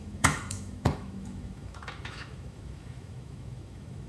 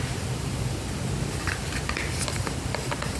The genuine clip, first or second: second